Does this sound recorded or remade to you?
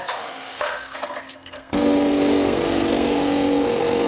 remade